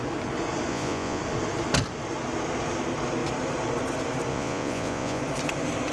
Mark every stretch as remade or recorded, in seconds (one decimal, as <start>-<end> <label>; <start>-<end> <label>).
0.0-0.7 recorded; 0.7-1.2 remade; 1.2-4.3 recorded; 4.3-5.2 remade; 5.2-5.9 recorded